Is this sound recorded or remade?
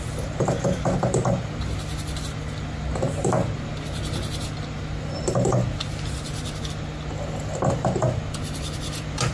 recorded